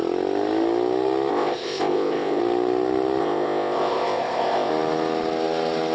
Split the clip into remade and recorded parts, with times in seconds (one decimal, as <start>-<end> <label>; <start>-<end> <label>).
0.0-1.3 recorded; 1.3-2.4 remade; 2.4-3.2 recorded; 3.2-4.7 remade; 4.7-5.9 recorded